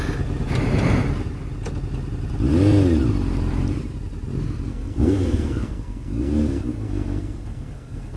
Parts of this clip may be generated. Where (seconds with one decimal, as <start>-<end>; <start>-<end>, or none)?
4.7-8.2